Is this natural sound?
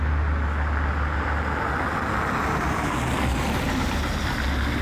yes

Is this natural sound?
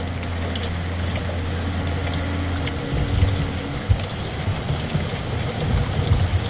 yes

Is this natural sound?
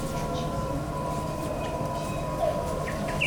no